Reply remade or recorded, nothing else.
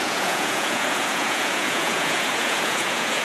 remade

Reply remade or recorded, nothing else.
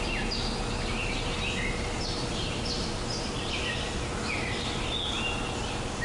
recorded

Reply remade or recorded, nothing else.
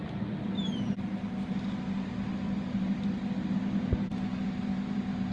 recorded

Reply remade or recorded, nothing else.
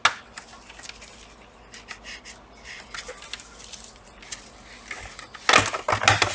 recorded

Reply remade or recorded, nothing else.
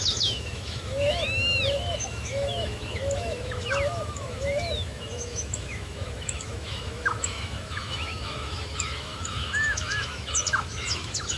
remade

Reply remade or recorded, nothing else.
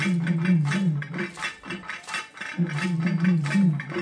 recorded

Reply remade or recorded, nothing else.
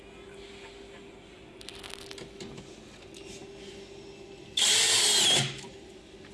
recorded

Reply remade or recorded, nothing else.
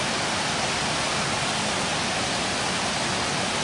recorded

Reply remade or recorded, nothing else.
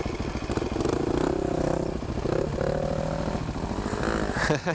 recorded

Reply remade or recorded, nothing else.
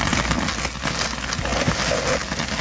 recorded